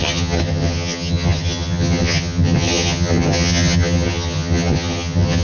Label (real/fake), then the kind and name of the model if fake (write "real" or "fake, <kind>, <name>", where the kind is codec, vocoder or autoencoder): fake, vocoder, HiFi-GAN